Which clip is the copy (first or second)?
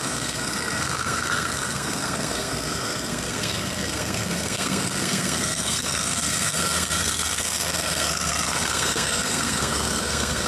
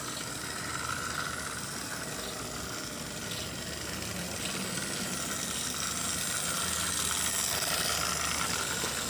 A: first